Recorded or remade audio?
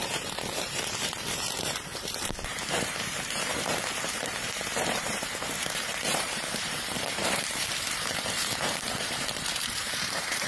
remade